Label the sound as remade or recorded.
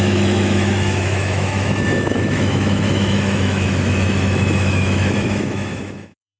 remade